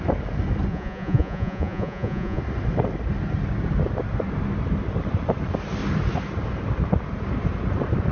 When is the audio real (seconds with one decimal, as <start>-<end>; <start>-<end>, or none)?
0.0-0.7; 2.4-8.1